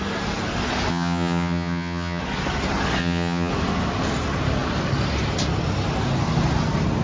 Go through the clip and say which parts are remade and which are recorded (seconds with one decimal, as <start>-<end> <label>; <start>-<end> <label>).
0.0-0.9 recorded; 0.9-2.2 remade; 2.2-3.0 recorded; 3.0-3.5 remade; 3.5-7.0 recorded